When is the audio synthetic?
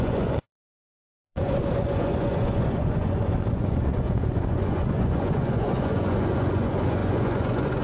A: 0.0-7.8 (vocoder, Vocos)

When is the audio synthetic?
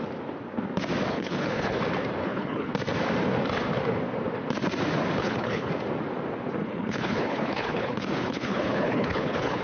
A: 1.1-1.8 (codec, HILCodec); 2.2-2.7; 5.2-5.7; 6.6-9.6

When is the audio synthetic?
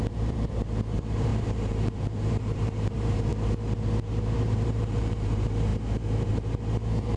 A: 0.0-3.3 (vocoder, BigVGAN v2); 4.0-7.2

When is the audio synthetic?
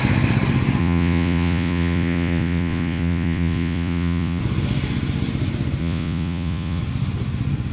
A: 0.8-4.4 (vocoder, Vocos); 5.8-6.8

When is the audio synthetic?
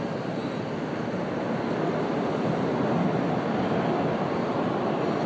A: none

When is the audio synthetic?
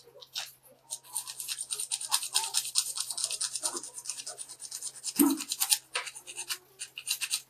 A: none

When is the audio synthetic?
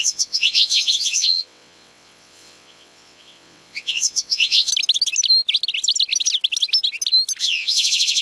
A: 0.0-4.7 (vocoder, WaveNeXt); 7.4-8.2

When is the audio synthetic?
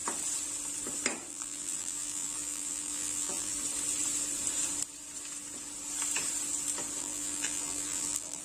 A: 1.3-3.5 (vocoder, BigVGAN v2); 7.0-8.4